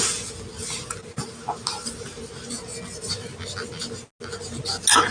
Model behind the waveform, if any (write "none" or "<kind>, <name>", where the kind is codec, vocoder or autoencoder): none